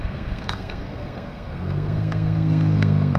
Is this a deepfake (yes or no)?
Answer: yes